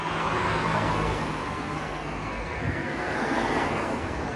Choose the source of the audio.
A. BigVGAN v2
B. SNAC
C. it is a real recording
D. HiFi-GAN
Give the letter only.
B